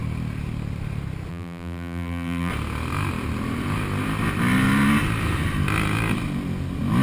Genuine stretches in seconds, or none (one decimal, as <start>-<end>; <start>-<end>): 0.0-1.3; 2.5-7.0